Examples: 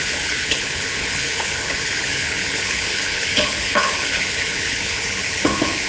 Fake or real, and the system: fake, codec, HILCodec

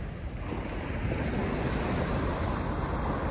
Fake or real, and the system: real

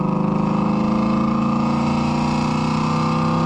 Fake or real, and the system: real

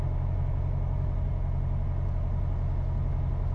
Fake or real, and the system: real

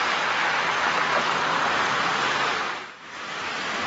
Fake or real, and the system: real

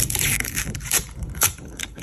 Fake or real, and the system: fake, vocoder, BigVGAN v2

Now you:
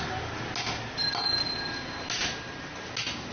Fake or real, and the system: real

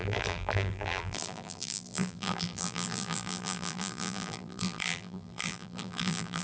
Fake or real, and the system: fake, vocoder, BigVGAN v2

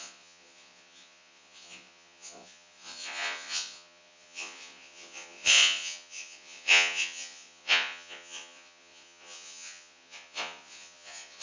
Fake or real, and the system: fake, vocoder, Vocos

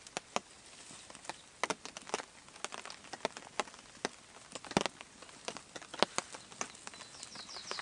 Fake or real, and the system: real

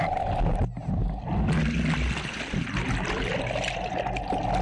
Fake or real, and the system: real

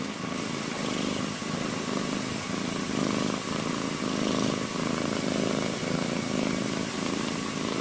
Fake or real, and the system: real